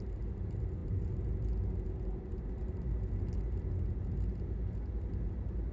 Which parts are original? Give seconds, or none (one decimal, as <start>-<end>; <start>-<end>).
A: 0.0-5.7

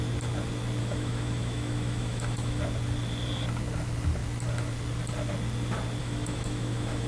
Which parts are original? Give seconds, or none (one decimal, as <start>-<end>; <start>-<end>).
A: 0.0-0.8; 2.6-6.0

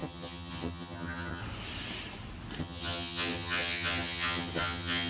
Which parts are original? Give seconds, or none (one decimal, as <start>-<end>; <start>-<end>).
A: 1.4-2.6